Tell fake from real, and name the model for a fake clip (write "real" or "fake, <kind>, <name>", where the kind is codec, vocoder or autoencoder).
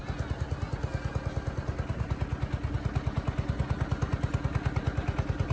real